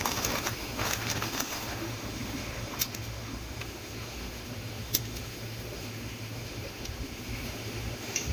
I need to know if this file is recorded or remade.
remade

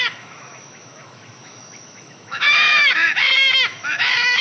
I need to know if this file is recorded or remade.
remade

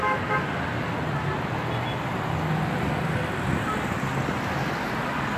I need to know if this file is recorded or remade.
recorded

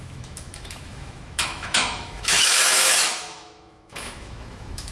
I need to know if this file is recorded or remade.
remade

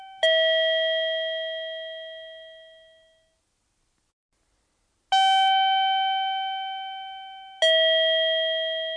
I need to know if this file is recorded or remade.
recorded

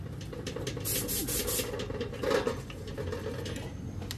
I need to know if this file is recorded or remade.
recorded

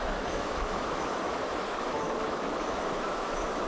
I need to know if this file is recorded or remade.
remade